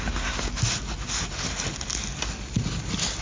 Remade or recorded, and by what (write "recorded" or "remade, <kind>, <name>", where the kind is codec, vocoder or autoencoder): recorded